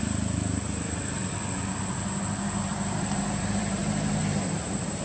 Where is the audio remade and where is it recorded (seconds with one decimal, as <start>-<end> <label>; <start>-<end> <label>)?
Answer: 0.0-2.7 recorded; 2.7-3.8 remade; 3.8-4.2 recorded; 4.2-5.0 remade